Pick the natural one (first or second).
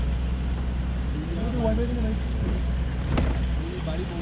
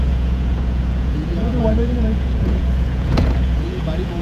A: first